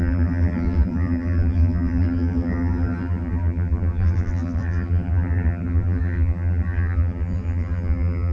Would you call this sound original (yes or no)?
no